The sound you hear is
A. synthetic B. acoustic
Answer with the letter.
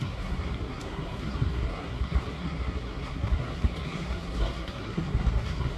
A